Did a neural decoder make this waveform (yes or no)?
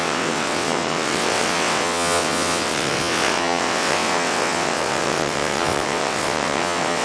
yes